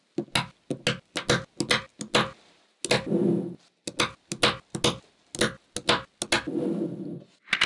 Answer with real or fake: real